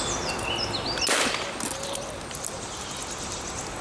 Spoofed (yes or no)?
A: no